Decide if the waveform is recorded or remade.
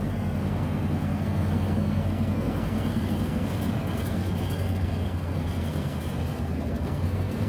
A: remade